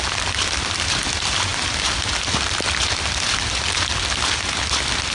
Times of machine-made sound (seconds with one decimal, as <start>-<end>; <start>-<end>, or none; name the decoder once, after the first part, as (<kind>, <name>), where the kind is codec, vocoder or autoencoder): none